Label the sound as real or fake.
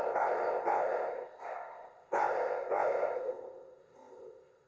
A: fake